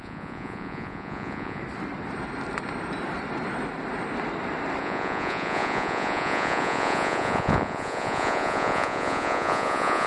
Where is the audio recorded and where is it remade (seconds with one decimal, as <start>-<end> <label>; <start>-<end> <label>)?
0.0-1.6 remade; 1.6-4.8 recorded; 4.8-10.1 remade

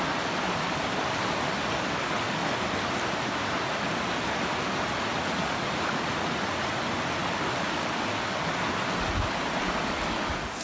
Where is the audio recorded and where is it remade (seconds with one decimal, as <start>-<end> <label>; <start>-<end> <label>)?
0.0-5.1 recorded; 5.1-6.8 remade; 6.8-10.6 recorded

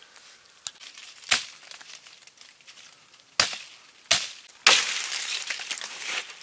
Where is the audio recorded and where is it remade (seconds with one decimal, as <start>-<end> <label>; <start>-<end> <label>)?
0.0-6.4 recorded

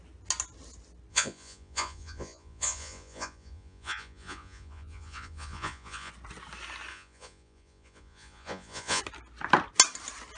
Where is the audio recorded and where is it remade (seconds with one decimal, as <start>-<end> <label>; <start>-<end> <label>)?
0.0-1.1 recorded; 1.1-6.1 remade; 6.1-6.9 recorded; 6.9-9.0 remade; 9.0-10.4 recorded

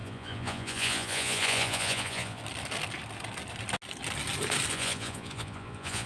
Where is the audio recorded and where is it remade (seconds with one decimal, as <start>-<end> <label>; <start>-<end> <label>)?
0.0-2.4 remade; 2.4-4.7 recorded; 4.7-6.1 remade

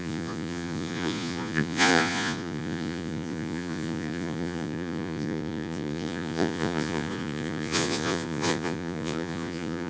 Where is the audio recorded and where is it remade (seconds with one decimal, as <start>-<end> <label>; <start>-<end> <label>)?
0.0-9.9 remade

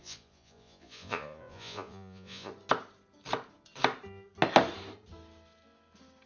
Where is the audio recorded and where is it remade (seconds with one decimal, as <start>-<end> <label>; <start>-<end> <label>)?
0.0-2.5 remade; 2.5-6.3 recorded

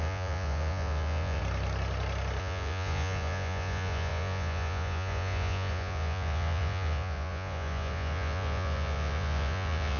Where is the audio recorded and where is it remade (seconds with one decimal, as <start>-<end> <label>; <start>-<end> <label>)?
0.0-1.4 remade; 1.4-2.4 recorded; 2.4-10.0 remade